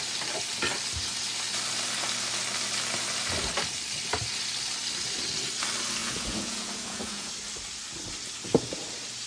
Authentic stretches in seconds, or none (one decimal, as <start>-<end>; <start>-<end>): 0.0-6.0; 7.3-9.3